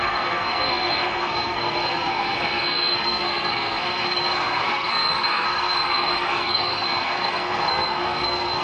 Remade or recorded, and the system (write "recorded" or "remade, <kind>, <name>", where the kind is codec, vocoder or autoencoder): remade, codec, SNAC